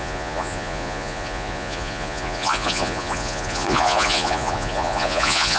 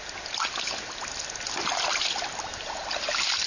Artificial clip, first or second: first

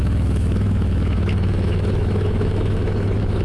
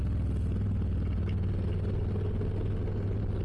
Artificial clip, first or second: first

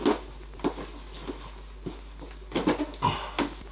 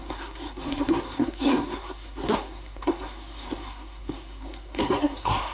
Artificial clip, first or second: second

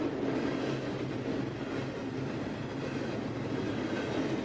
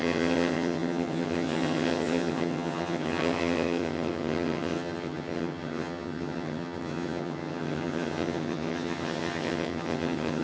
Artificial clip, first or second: second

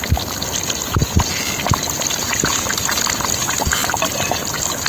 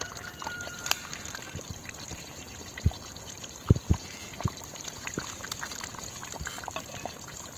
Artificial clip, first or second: second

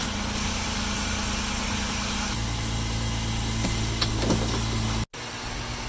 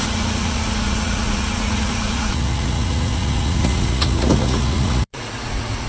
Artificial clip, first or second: second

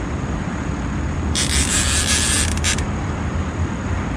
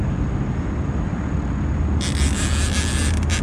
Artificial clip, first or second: first